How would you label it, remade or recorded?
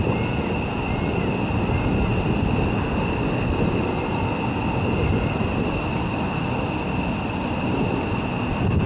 recorded